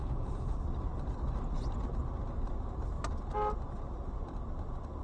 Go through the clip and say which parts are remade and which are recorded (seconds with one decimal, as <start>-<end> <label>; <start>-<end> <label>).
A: 0.0-0.5 remade; 0.5-5.0 recorded